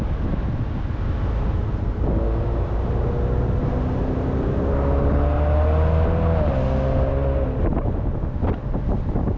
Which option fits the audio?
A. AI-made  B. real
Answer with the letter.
B